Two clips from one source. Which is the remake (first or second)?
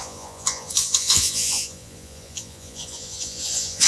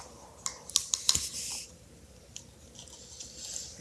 first